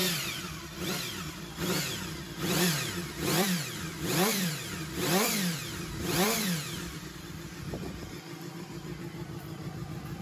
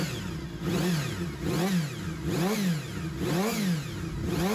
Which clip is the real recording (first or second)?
second